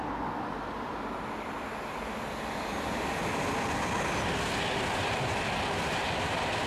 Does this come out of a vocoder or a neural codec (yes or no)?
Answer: no